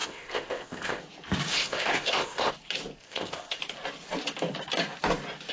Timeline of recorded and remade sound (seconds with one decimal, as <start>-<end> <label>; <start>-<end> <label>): 0.0-1.0 remade; 1.0-1.5 recorded; 1.5-2.5 remade; 2.5-3.0 recorded; 3.0-3.6 remade; 3.6-5.5 recorded